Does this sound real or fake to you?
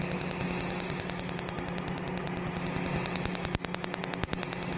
real